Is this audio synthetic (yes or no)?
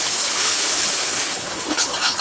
yes